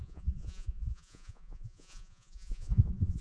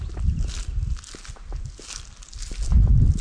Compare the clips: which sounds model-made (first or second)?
first